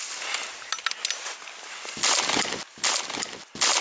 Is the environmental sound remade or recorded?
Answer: recorded